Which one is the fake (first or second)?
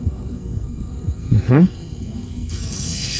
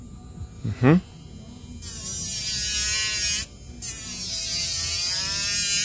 first